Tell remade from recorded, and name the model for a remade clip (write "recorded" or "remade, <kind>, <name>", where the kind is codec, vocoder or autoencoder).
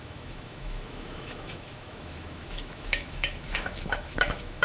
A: remade, autoencoder, DAC-VAE